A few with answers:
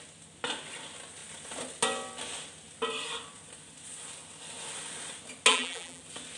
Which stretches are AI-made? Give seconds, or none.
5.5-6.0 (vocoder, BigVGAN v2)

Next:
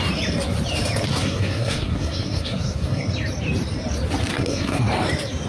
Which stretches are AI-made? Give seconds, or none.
1.1-3.1 (codec, SNAC); 4.3-4.8

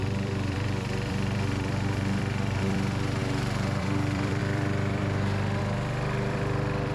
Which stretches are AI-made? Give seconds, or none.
0.0-6.9 (vocoder, BigVGAN v2)

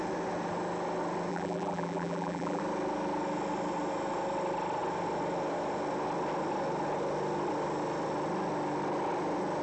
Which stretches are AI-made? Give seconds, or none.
1.3-2.6 (vocoder, BigVGAN v2)

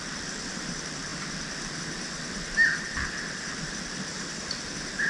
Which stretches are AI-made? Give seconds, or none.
none

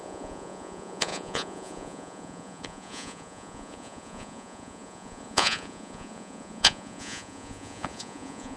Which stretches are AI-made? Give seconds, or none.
0.0-8.6 (vocoder, Vocos)

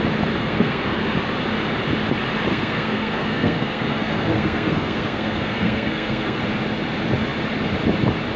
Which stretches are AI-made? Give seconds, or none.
0.4-1.0 (codec, SNAC); 2.5-6.4

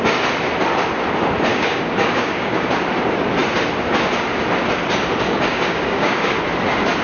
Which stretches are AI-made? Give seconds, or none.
1.5-2.7 (codec, DAC); 5.5-6.4